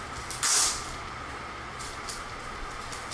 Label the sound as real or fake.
real